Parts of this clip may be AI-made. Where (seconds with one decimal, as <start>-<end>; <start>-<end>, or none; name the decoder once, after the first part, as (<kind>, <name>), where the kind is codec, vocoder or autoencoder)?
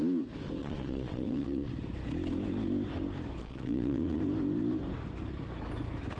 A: 0.6-1.7 (vocoder, Vocos); 3.4-4.2